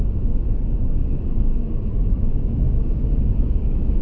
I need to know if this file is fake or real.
fake